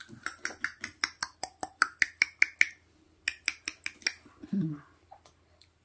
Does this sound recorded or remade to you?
recorded